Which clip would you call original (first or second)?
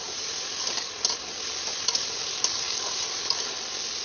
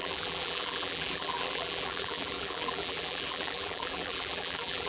first